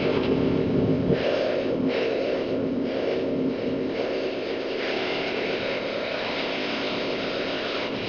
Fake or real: fake